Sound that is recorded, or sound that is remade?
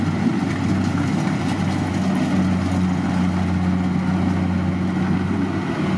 recorded